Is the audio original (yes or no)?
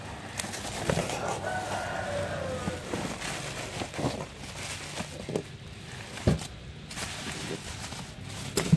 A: yes